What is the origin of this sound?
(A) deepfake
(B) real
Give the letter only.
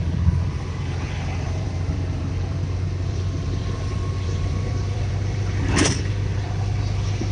A